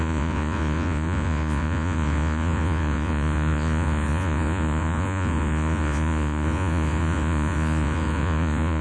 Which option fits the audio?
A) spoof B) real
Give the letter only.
A